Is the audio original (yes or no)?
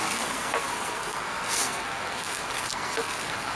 no